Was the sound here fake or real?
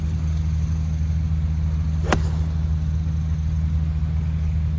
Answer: real